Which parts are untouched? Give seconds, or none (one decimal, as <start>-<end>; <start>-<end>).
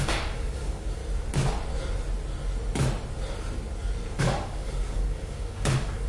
1.0-4.2